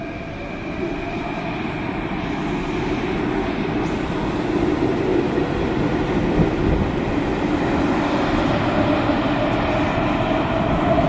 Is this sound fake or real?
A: real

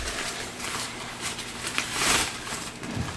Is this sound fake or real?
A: fake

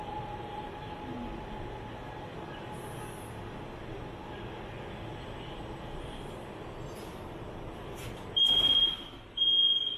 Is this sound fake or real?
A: real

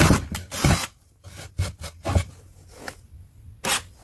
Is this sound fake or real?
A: real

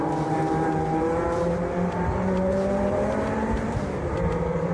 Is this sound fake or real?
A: fake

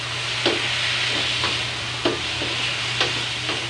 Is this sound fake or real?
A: real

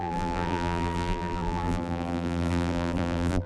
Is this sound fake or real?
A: fake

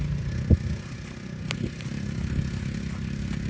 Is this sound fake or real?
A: real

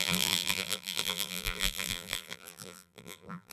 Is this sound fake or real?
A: fake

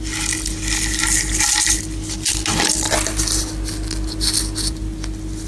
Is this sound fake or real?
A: real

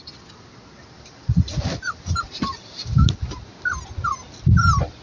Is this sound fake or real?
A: real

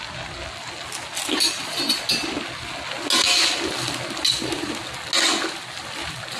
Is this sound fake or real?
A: real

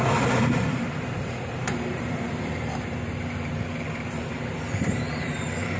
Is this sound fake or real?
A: fake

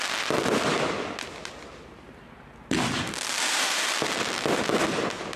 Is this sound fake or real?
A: real